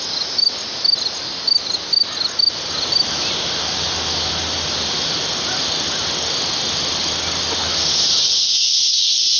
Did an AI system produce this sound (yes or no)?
no